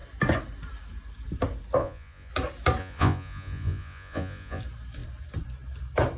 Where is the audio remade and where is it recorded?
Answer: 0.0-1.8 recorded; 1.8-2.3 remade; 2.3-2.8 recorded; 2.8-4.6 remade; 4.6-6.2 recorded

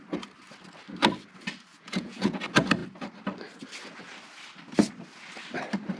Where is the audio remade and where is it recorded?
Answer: 0.0-1.7 recorded; 1.7-2.4 remade; 2.4-6.0 recorded

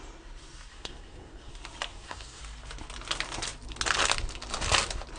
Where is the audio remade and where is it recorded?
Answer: 0.0-0.7 recorded; 0.7-1.5 remade; 1.5-1.9 recorded; 1.9-2.4 remade; 2.4-5.2 recorded

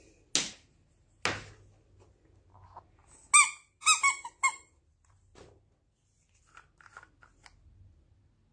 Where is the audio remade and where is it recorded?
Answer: 0.0-8.5 recorded